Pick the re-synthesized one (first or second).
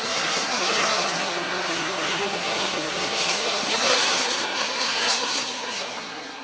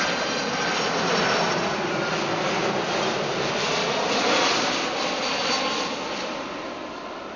first